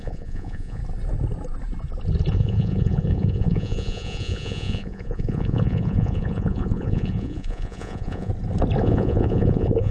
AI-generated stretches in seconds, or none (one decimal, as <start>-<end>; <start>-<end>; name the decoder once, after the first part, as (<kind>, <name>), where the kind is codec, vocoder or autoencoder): 0.0-0.8 (vocoder, Vocos); 2.3-8.3; 8.8-9.9